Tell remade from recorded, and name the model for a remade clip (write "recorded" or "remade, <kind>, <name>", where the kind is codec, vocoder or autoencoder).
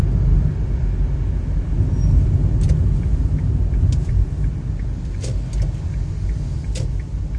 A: recorded